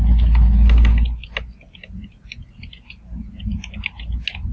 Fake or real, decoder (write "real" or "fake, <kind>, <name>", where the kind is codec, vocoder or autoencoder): real